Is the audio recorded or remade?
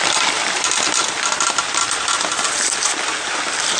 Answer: recorded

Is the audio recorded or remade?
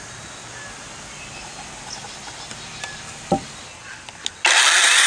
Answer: recorded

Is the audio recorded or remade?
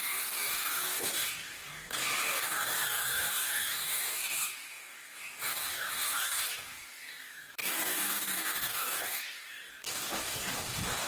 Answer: remade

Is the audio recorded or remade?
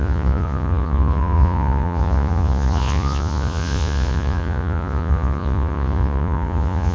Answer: remade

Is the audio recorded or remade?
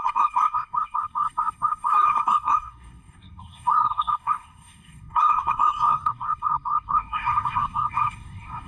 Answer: remade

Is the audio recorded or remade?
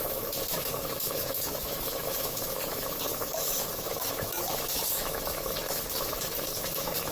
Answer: remade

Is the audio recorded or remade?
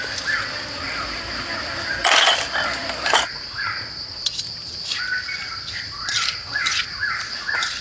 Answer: recorded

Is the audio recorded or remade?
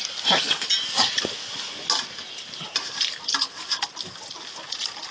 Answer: recorded